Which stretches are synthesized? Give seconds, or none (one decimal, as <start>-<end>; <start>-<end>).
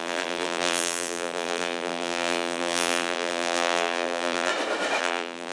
0.0-4.5; 5.0-5.5